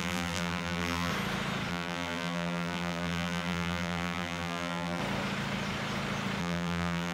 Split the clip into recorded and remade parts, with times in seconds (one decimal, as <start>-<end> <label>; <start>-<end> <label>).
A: 0.0-1.1 remade; 1.1-1.7 recorded; 1.7-5.0 remade; 5.0-6.4 recorded; 6.4-7.1 remade